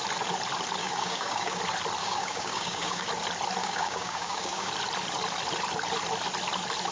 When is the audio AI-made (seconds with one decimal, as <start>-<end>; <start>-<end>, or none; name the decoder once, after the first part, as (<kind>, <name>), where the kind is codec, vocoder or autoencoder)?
0.8-1.6 (codec, DAC); 2.0-3.1; 3.6-4.7